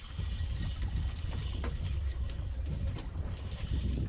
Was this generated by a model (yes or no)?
no